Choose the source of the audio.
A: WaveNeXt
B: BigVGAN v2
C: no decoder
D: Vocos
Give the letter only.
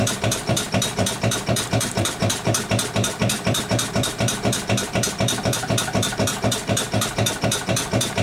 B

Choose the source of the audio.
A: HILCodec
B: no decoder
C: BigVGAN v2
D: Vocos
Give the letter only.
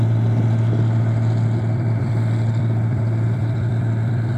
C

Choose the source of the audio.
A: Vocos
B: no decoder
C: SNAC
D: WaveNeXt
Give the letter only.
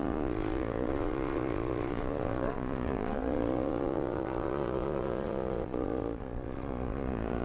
A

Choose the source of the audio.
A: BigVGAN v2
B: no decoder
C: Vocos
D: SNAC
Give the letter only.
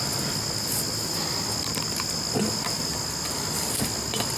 B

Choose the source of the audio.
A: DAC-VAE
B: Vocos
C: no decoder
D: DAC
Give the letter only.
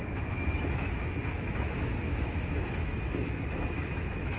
A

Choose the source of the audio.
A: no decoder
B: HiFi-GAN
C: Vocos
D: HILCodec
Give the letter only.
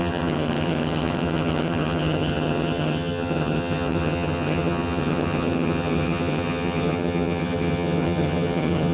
B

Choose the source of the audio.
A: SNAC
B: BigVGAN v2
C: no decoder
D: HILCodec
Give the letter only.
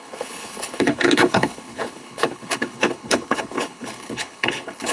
D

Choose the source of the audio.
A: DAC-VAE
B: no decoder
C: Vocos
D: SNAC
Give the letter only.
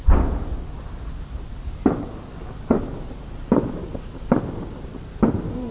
B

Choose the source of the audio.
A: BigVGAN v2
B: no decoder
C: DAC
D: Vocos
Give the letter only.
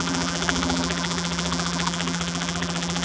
A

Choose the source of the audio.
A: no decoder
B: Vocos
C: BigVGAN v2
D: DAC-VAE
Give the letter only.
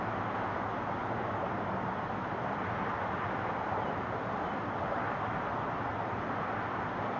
A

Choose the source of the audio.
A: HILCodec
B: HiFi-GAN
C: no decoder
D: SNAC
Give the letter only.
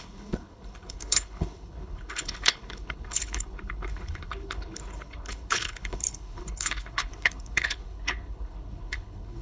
A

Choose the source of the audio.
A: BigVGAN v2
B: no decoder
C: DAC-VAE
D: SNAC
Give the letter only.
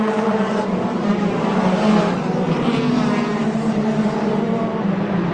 A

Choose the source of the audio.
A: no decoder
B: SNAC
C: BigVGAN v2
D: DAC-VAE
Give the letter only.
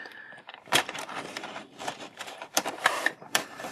C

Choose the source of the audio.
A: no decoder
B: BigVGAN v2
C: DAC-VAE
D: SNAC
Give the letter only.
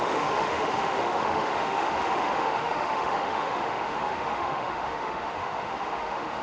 C